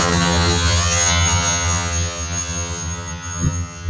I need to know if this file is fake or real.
fake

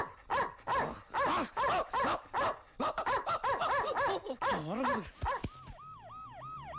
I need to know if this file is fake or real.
real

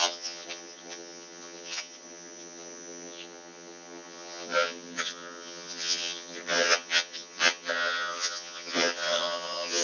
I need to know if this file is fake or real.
fake